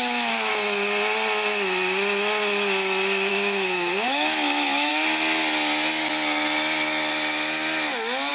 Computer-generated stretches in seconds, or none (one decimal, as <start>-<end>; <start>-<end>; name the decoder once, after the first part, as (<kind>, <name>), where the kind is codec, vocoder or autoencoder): 0.0-0.5 (autoencoder, DAC-VAE); 3.3-4.9